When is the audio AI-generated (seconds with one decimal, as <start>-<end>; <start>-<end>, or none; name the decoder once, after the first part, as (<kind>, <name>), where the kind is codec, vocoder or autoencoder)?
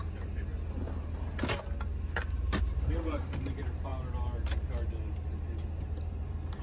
0.0-0.5 (vocoder, BigVGAN v2); 2.6-3.9; 5.8-6.6